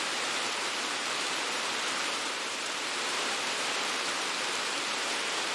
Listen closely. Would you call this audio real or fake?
fake